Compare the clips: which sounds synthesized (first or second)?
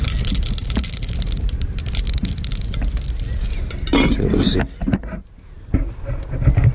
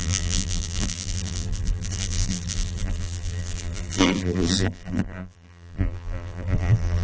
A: second